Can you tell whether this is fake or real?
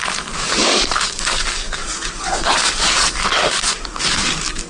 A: fake